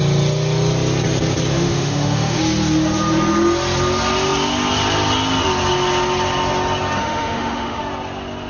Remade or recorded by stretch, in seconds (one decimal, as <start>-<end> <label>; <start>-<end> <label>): 0.0-1.5 recorded; 1.5-2.4 remade; 2.4-7.0 recorded; 7.0-7.8 remade; 7.8-8.5 recorded